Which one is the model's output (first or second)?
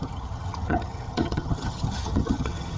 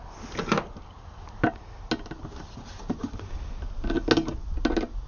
first